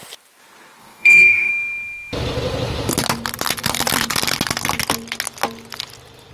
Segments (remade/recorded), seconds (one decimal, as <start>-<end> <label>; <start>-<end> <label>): 0.0-0.8 recorded; 0.8-1.5 remade; 1.5-6.3 recorded